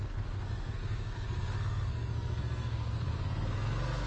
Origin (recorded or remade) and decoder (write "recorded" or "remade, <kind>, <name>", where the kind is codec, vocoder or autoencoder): remade, codec, SNAC